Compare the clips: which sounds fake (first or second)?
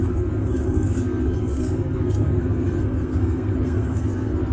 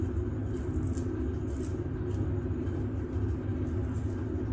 first